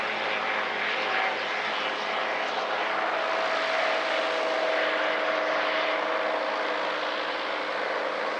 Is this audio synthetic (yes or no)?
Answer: no